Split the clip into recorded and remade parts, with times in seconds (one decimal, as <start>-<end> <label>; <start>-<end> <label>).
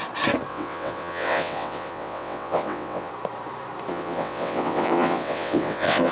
0.0-0.5 recorded; 0.5-3.1 remade; 3.1-3.9 recorded; 3.9-6.1 remade